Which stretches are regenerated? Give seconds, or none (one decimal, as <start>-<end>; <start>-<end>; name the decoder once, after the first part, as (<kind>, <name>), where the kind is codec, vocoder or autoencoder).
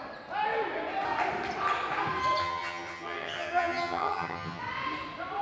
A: 2.4-4.6 (vocoder, HiFi-GAN)